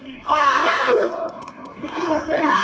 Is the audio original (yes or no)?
no